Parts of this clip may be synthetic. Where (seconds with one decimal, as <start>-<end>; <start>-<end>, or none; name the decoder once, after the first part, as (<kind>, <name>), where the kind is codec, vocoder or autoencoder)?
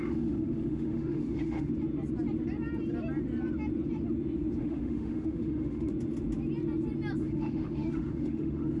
0.0-1.7 (autoencoder, DAC-VAE); 4.6-5.9; 7.2-8.8